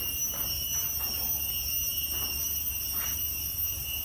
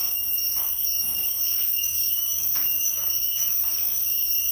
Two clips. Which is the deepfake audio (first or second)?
second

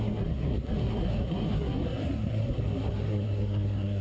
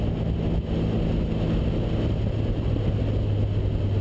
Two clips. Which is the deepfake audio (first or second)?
first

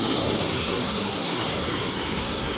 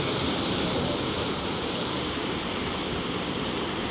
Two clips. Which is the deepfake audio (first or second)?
first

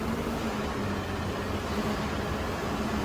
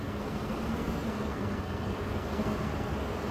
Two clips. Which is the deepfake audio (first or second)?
second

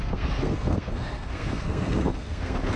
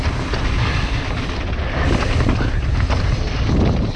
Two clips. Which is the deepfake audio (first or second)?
first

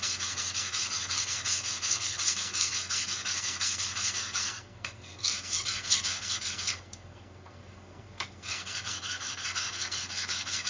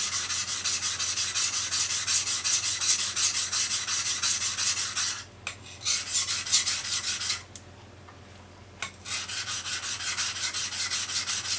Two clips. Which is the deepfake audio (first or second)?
first